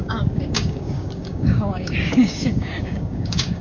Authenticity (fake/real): fake